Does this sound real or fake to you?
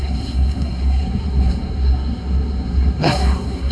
fake